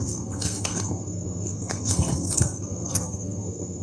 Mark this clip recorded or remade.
remade